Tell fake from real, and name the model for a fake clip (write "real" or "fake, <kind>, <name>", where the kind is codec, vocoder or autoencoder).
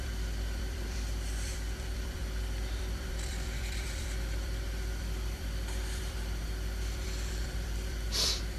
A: fake, vocoder, BigVGAN v2